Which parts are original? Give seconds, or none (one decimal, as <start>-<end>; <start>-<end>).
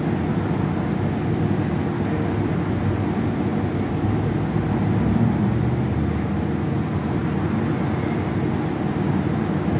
0.0-9.8